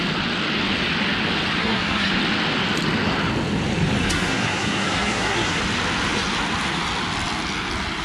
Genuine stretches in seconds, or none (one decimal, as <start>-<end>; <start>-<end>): 0.0-1.6; 2.1-4.0; 5.6-8.0